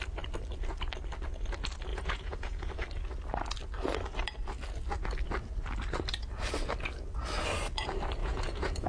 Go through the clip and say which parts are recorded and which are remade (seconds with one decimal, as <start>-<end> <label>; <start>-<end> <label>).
0.0-1.9 recorded; 1.9-2.7 remade; 2.7-8.2 recorded; 8.2-8.9 remade